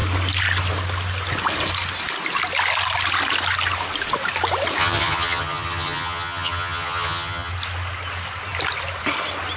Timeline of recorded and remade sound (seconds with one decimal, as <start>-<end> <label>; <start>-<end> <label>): 0.0-4.8 recorded; 4.8-7.5 remade; 7.5-9.6 recorded